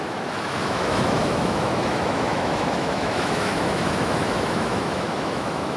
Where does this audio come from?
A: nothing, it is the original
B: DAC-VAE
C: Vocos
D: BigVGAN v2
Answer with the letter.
B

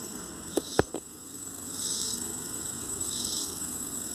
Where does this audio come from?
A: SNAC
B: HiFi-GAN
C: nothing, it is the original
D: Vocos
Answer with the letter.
A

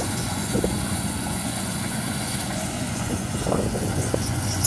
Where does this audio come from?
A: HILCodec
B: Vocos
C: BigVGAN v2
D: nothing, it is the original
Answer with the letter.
B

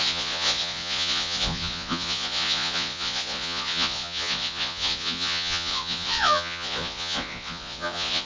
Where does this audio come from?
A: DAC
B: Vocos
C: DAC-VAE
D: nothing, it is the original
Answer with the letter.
B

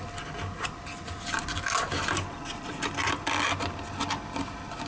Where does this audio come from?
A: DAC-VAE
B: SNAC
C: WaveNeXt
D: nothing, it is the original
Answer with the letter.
D